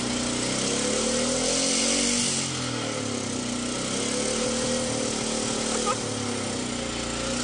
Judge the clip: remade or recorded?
recorded